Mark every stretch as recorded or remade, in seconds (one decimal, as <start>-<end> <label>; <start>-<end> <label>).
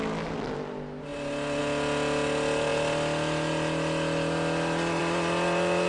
0.0-5.9 recorded